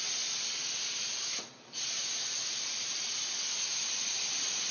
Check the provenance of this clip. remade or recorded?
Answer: recorded